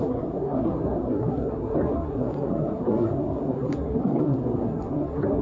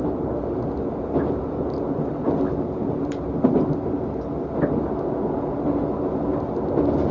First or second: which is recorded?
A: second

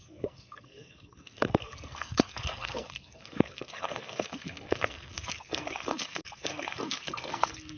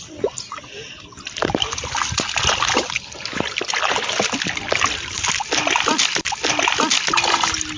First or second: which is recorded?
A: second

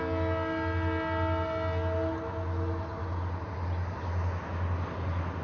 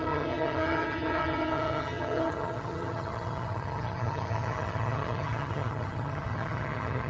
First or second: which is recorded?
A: first